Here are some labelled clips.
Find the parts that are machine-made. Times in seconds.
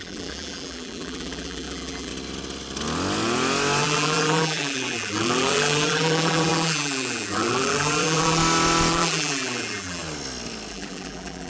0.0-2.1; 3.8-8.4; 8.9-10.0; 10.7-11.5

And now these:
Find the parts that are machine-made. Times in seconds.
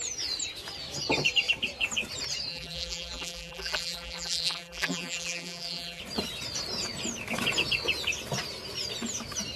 2.5-6.0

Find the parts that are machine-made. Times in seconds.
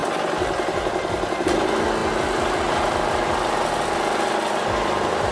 none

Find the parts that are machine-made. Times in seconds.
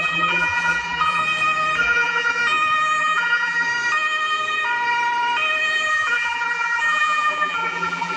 0.0-1.2; 1.8-2.4; 3.0-3.7; 5.9-8.2